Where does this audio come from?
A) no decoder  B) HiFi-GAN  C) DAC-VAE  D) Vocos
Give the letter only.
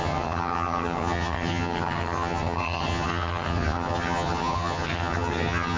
B